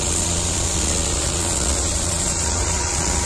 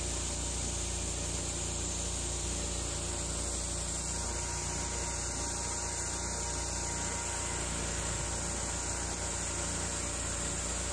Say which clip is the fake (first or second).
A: first